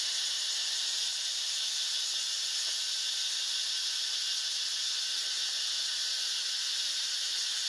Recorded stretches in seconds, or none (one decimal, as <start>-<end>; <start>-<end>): 0.0-7.7